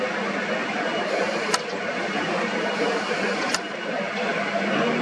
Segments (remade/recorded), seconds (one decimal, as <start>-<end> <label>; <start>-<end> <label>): 0.0-0.6 recorded; 0.6-3.6 remade; 3.6-5.0 recorded